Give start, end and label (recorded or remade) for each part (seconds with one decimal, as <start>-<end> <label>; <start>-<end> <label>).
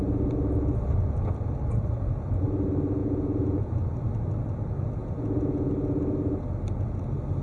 0.0-3.0 recorded; 3.0-3.7 remade; 3.7-5.0 recorded; 5.0-5.7 remade; 5.7-7.4 recorded